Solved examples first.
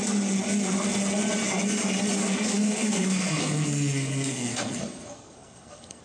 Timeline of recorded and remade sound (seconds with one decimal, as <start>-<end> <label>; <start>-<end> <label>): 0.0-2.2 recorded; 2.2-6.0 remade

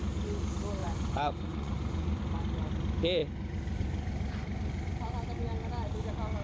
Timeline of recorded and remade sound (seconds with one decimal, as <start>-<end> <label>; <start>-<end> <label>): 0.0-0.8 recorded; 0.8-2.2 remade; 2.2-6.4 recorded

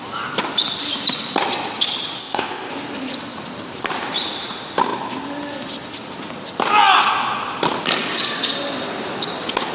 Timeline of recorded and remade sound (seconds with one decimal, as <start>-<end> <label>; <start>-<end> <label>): 0.0-2.2 recorded; 2.2-2.7 remade; 2.7-9.7 recorded